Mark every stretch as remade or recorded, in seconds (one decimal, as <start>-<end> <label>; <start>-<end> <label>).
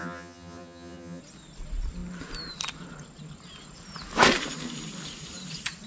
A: 0.0-1.2 remade; 1.2-5.9 recorded